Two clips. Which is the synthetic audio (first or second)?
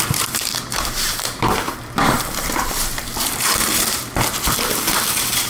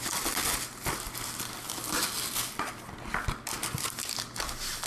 first